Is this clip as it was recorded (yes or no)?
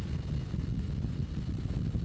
yes